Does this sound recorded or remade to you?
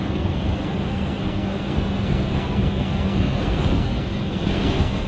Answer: remade